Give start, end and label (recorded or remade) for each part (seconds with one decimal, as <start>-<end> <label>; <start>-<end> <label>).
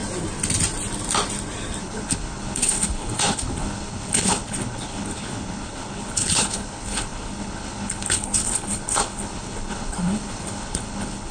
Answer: 0.0-1.8 recorded; 1.8-11.3 remade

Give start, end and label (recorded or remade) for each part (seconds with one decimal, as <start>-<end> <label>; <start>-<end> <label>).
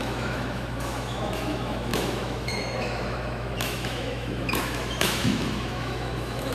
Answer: 0.0-6.5 remade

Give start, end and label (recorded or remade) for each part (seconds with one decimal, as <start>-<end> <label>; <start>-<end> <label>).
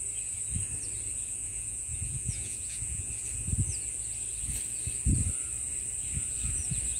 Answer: 0.0-1.4 recorded; 1.4-3.1 remade; 3.1-7.0 recorded